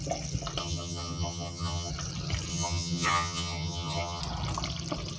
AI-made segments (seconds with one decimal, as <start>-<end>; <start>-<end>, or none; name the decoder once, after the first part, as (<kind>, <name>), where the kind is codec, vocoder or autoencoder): 0.6-1.9 (vocoder, HiFi-GAN); 2.5-4.2